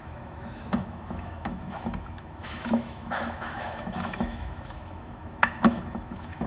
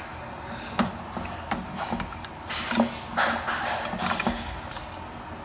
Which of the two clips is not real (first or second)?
first